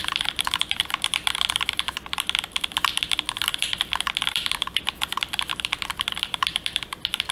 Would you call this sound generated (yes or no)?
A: yes